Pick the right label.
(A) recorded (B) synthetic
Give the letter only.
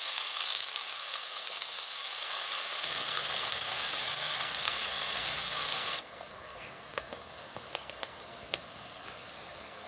B